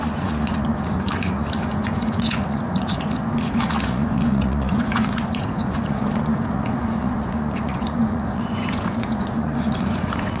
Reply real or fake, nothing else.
fake